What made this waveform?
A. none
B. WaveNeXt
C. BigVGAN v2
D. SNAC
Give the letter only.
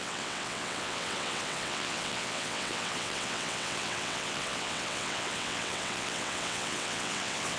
B